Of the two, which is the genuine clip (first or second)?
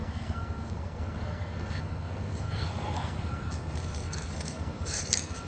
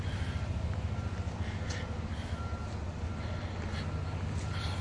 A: second